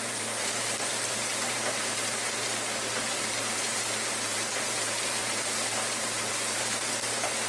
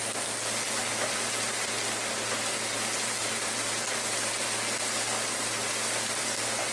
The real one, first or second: second